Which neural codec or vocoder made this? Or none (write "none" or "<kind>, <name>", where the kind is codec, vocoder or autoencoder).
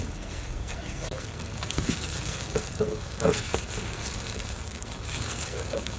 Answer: codec, SNAC